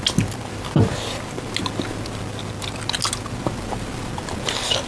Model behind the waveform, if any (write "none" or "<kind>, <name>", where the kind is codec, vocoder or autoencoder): none